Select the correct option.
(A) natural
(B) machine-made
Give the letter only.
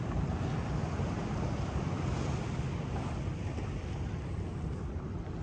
A